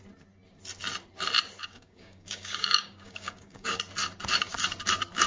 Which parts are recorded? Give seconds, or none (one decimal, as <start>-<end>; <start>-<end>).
0.0-1.6; 3.8-5.3